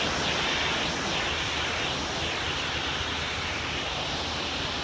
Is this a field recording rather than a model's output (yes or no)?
yes